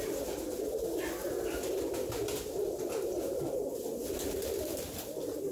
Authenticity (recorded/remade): recorded